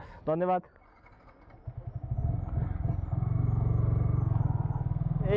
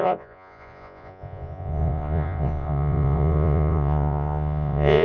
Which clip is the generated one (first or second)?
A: second